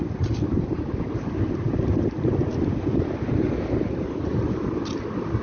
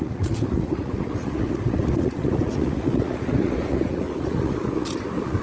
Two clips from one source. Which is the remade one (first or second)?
second